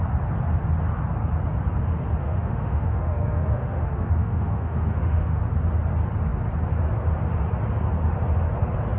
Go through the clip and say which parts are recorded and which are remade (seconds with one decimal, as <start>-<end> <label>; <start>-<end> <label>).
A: 0.0-2.2 recorded; 2.2-5.4 remade; 5.4-9.0 recorded